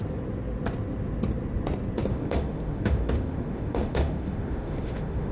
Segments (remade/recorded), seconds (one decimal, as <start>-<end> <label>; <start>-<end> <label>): 0.0-2.1 recorded; 2.1-5.3 remade